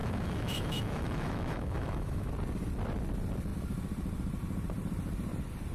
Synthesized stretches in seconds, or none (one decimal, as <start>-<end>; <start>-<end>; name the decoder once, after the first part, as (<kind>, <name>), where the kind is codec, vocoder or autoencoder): 0.0-2.3 (autoencoder, DAC-VAE)